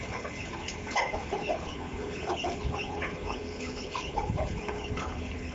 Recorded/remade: remade